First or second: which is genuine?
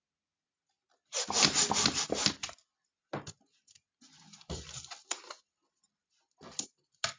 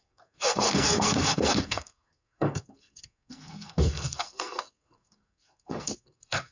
first